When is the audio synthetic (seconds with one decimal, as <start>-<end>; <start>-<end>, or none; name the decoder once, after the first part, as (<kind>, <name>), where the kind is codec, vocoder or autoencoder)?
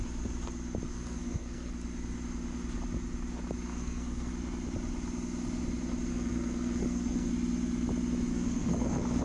0.9-1.7 (codec, SNAC); 3.7-4.3; 6.1-7.3; 8.3-9.2